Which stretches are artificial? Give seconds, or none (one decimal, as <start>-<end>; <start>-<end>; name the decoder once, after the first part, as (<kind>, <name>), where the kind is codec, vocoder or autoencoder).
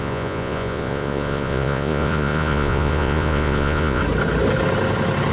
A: 0.0-4.0 (vocoder, Vocos)